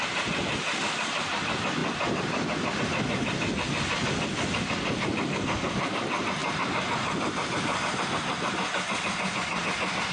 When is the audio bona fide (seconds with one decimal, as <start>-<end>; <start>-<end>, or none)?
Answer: 0.0-10.1